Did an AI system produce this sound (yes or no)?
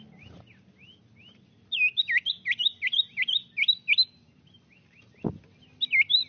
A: no